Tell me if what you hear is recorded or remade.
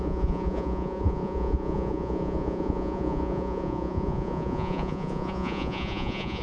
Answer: remade